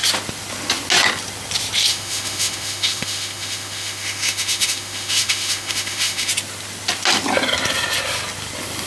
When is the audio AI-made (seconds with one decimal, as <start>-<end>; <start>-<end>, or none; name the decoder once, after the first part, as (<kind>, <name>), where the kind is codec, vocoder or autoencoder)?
1.9-6.3 (autoencoder, DAC-VAE)